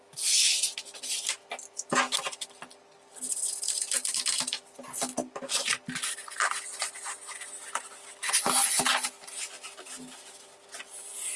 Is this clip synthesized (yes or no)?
no